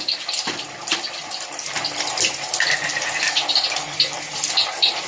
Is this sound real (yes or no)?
yes